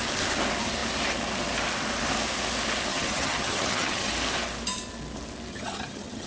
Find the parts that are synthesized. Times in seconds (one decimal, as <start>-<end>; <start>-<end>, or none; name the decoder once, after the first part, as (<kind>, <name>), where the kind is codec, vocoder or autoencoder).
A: 2.9-4.1 (vocoder, HiFi-GAN); 5.5-6.3